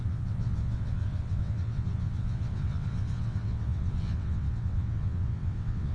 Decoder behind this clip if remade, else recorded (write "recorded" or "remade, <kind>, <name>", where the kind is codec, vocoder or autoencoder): remade, vocoder, WaveNeXt